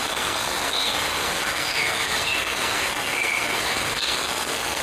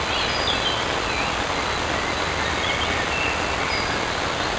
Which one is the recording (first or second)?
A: second